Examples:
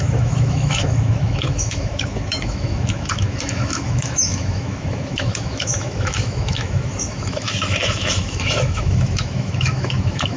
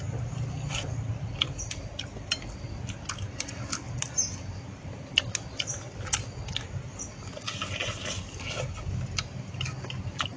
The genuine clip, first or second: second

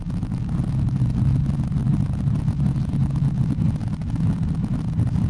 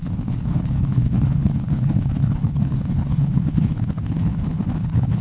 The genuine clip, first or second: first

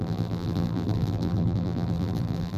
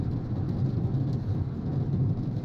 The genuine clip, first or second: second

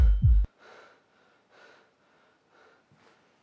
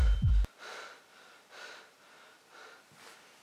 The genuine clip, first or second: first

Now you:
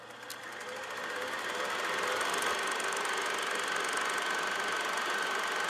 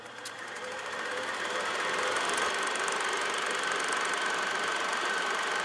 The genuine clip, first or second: first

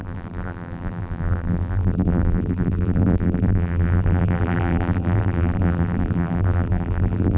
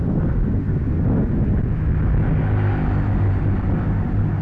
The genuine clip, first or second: second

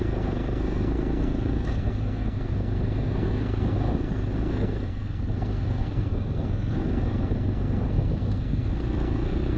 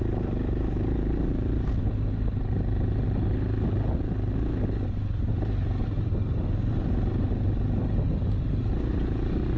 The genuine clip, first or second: second